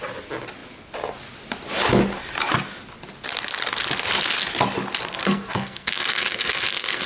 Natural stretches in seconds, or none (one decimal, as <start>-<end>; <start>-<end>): 0.0-5.2